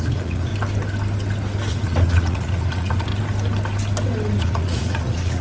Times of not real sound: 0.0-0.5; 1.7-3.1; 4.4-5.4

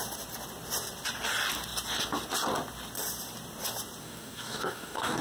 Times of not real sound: 4.0-5.2

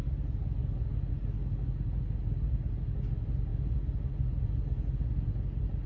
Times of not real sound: none

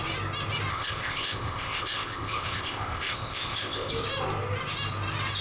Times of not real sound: 0.7-3.9

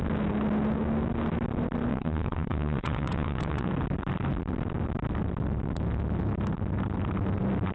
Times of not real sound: 1.9-3.7

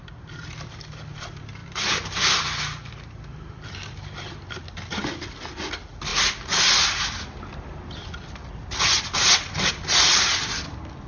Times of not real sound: none